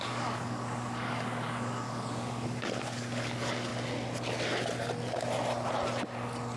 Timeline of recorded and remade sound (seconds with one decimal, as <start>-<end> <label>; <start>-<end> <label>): 0.0-3.7 remade; 3.7-6.6 recorded